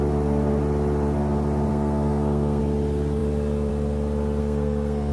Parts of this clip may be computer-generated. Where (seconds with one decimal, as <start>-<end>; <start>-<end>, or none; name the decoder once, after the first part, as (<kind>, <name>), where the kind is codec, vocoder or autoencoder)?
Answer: 1.7-2.6 (codec, SNAC); 4.4-5.1

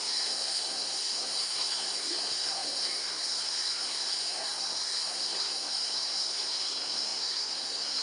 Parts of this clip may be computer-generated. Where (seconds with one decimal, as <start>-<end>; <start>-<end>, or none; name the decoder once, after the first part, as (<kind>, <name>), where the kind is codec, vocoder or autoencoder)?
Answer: 0.0-8.0 (codec, SNAC)

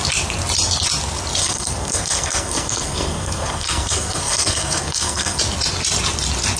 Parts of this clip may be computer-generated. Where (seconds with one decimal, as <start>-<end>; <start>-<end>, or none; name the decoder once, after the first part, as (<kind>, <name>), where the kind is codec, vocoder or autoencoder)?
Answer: 1.4-5.4 (codec, SNAC)

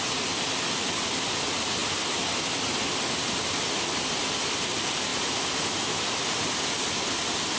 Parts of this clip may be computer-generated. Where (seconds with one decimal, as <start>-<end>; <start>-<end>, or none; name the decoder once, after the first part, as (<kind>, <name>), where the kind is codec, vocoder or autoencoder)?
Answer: none